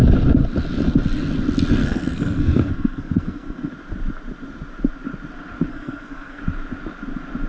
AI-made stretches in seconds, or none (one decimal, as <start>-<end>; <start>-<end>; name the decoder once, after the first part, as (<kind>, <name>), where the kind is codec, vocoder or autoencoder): 1.8-3.7 (codec, SNAC); 5.7-6.4